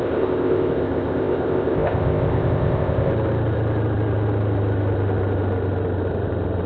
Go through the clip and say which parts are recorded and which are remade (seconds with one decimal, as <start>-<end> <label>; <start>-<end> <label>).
0.0-3.1 remade; 3.1-6.7 recorded

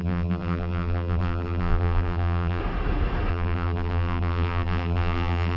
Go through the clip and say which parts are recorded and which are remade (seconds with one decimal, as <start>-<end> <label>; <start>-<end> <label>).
0.0-2.6 remade; 2.6-3.3 recorded; 3.3-5.6 remade

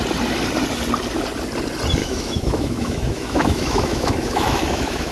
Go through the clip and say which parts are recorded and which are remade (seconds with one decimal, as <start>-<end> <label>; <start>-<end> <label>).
0.0-2.0 recorded; 2.0-5.1 remade

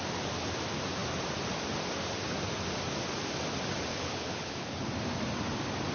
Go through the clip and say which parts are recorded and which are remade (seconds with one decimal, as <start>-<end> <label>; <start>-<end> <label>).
0.0-3.9 recorded; 3.9-4.9 remade; 4.9-5.9 recorded

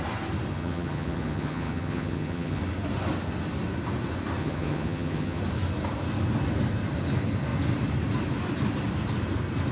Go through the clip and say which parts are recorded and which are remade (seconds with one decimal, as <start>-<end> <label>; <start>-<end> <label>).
0.0-0.5 recorded; 0.5-2.6 remade; 2.6-4.4 recorded; 4.4-5.4 remade; 5.4-9.7 recorded